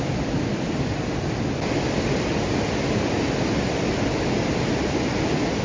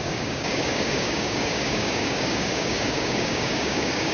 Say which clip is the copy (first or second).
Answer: second